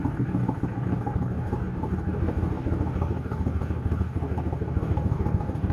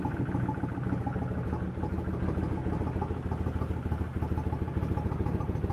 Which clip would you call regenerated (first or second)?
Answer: first